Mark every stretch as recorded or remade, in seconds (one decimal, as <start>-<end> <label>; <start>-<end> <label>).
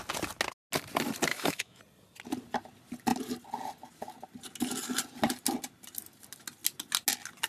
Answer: 0.0-1.3 recorded; 1.3-1.8 remade; 1.8-7.5 recorded